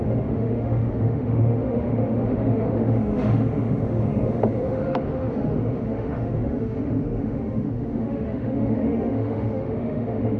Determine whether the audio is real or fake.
fake